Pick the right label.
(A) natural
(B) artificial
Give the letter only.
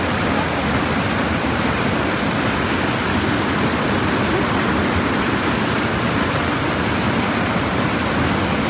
A